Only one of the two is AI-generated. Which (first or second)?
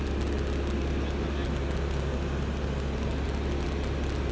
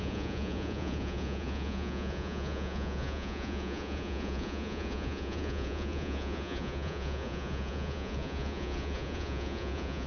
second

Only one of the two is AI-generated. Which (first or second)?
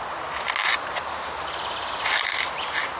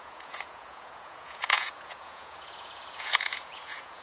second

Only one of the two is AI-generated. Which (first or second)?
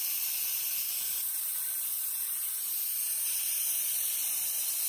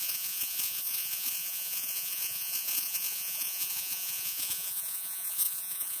second